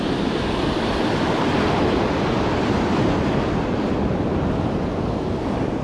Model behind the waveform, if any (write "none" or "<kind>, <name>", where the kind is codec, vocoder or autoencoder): none